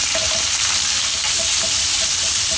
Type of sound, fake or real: fake